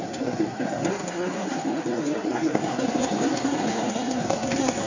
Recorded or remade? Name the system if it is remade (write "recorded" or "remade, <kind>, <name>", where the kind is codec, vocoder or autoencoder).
remade, codec, SNAC